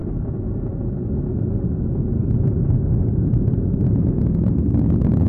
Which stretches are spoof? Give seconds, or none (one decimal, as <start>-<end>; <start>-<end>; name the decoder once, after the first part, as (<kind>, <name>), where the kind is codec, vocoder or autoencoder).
none